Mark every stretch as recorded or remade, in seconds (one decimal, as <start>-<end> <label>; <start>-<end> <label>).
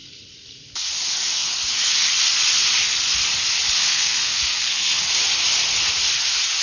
0.0-3.8 recorded; 3.8-5.0 remade; 5.0-6.6 recorded